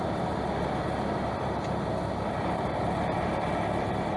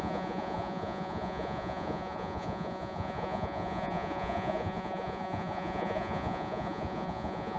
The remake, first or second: second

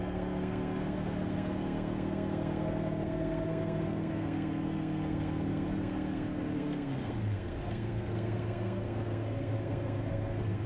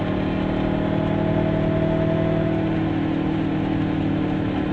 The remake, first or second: first